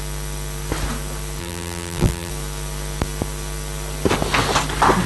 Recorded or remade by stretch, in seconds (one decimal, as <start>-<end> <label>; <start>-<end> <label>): 0.0-1.4 recorded; 1.4-2.3 remade; 2.3-5.1 recorded